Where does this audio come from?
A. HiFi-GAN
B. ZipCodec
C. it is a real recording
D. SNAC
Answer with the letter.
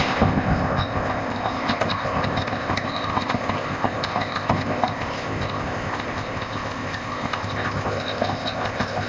B